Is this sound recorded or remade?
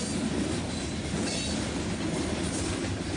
recorded